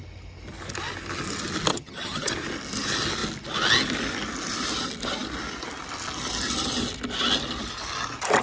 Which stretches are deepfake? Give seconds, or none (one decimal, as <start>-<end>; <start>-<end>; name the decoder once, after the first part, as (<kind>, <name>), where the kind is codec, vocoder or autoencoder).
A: 1.7-2.3 (vocoder, HiFi-GAN)

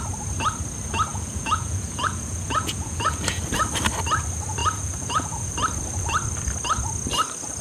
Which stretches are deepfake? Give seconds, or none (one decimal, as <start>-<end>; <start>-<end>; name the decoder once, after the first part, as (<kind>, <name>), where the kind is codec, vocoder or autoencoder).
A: 1.1-3.4 (vocoder, Vocos); 4.6-5.5

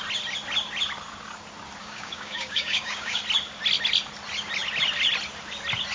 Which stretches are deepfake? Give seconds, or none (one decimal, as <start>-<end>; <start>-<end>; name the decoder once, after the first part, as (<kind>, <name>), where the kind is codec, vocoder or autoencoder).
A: 1.8-3.2 (codec, DAC)

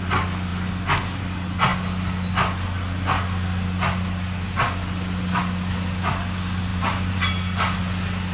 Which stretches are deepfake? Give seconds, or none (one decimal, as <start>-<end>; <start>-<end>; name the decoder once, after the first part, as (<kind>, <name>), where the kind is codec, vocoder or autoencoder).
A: 6.7-7.3 (vocoder, BigVGAN v2)

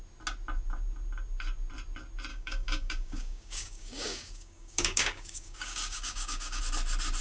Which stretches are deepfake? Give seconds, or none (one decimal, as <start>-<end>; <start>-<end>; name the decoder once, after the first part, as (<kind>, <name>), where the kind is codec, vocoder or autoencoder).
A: 2.3-6.6 (codec, DAC)

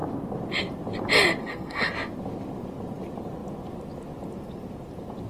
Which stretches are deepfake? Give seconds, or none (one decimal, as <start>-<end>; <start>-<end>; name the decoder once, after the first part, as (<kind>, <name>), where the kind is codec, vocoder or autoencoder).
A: 1.4-1.9 (codec, SNAC)